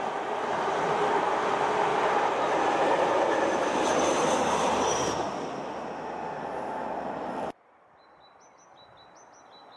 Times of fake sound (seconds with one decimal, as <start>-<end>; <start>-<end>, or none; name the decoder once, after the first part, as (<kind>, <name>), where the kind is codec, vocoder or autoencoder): 1.9-5.3 (vocoder, BigVGAN v2)